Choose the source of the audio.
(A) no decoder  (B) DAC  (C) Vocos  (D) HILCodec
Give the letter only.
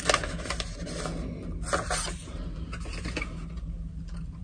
A